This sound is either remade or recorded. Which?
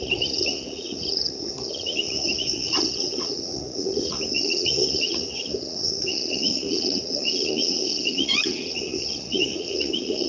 remade